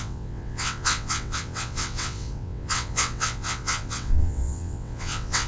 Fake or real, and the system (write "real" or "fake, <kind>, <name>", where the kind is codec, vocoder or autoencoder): fake, vocoder, WaveNeXt